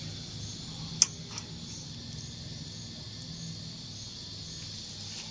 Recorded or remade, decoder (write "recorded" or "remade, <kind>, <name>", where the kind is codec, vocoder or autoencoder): recorded